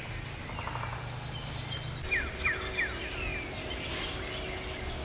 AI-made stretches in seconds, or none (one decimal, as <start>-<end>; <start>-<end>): none